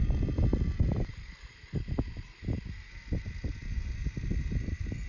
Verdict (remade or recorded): recorded